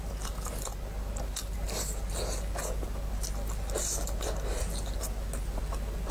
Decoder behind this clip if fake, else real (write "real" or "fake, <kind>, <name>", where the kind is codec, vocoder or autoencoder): real